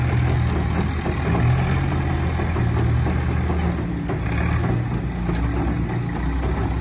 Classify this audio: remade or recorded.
recorded